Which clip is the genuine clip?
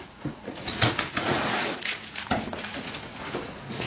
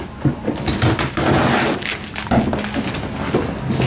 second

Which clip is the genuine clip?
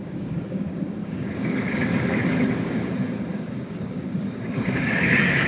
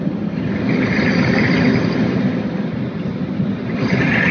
second